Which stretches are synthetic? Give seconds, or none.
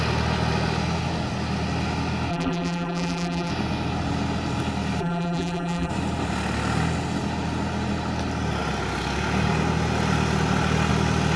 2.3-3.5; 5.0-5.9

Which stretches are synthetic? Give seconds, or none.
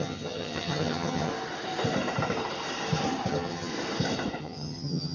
0.0-1.3; 3.3-3.7; 4.4-5.1